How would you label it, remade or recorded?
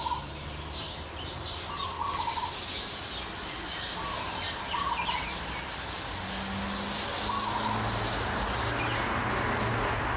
recorded